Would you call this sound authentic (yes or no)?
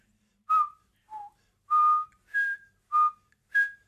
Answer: yes